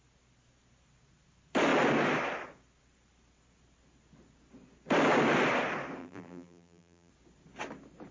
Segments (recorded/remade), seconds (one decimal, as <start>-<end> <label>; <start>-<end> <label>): 0.0-6.0 recorded; 6.0-7.1 remade; 7.1-8.1 recorded